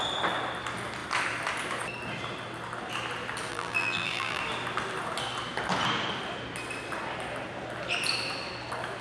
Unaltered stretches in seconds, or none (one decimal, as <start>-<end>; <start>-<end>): 0.0-3.5; 4.4-9.0

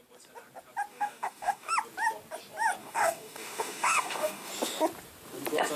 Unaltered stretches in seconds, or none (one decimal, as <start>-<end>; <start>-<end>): 0.0-0.9; 1.7-2.8; 4.5-5.8

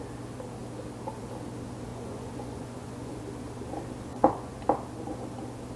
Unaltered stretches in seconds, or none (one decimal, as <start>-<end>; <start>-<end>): 0.0-1.9; 3.2-4.1; 4.6-5.8

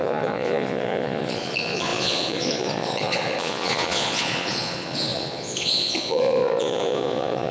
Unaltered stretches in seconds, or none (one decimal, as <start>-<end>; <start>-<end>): none

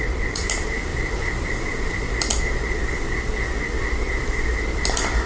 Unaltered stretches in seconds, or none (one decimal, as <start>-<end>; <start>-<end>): 2.3-4.2

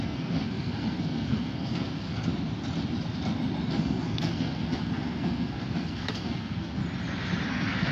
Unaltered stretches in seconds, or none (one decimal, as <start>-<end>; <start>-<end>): 2.3-3.7; 6.8-7.5

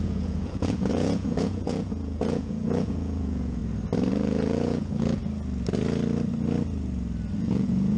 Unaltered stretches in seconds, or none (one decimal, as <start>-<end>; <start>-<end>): 3.6-4.1; 5.2-7.4

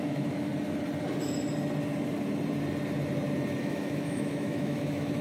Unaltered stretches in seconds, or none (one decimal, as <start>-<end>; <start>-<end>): 0.5-3.6